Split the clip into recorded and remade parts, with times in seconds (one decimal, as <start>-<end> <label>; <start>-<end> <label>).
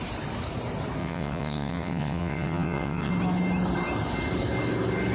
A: 0.0-1.0 recorded; 1.0-3.1 remade; 3.1-5.1 recorded